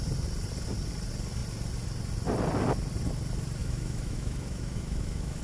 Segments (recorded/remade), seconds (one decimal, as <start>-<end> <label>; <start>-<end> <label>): 0.0-3.6 recorded; 3.6-5.4 remade